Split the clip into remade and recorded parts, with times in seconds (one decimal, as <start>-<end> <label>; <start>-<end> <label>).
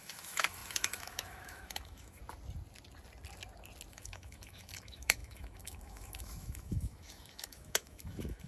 0.0-2.2 remade; 2.2-3.9 recorded; 3.9-8.5 remade